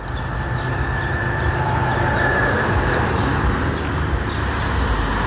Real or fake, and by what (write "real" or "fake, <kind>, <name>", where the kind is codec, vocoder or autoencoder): real